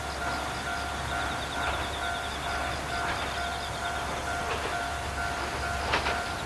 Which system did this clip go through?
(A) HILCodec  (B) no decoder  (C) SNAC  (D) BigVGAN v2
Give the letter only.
B